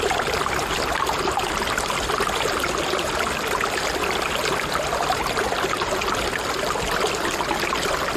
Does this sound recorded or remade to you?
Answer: recorded